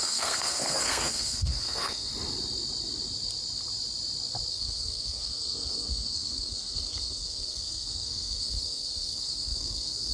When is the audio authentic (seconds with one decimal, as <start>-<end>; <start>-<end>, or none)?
2.1-4.5